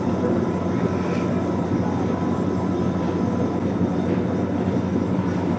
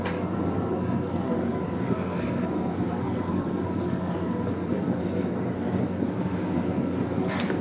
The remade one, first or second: second